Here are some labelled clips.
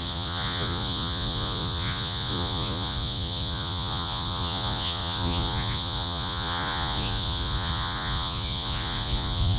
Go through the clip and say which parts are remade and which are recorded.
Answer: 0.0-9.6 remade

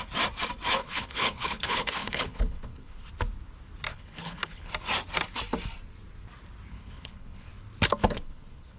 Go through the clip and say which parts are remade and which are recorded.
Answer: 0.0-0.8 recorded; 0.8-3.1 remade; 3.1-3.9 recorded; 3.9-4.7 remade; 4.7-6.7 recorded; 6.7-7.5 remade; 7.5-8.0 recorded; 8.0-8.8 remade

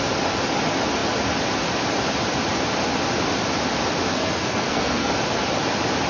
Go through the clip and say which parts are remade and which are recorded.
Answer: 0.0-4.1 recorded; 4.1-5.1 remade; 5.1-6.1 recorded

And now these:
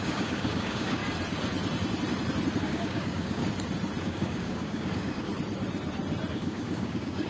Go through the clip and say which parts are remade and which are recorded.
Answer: 0.0-1.0 remade; 1.0-2.6 recorded; 2.6-3.4 remade; 3.4-4.0 recorded; 4.0-5.3 remade; 5.3-6.3 recorded; 6.3-7.3 remade

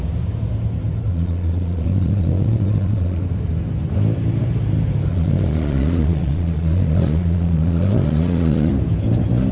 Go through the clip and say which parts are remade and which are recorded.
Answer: 0.0-1.1 recorded; 1.1-3.2 remade; 3.2-5.1 recorded; 5.1-8.7 remade; 8.7-9.5 recorded

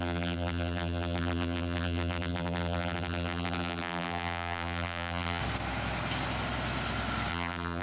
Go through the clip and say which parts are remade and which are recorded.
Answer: 0.0-5.4 remade; 5.4-7.3 recorded; 7.3-7.8 remade

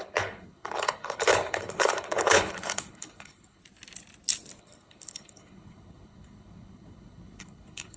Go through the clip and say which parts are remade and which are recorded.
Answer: 0.0-3.6 remade; 3.6-4.6 recorded; 4.6-8.0 remade